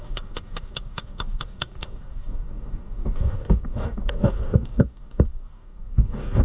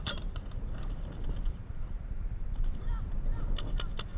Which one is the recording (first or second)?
second